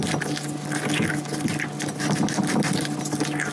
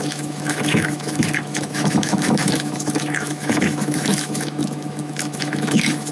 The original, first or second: first